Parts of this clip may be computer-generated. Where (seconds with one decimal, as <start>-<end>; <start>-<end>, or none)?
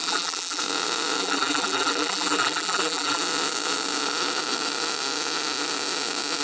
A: 0.0-0.6; 1.2-3.2